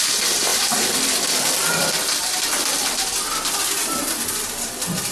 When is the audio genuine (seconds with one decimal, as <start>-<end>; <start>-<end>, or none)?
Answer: none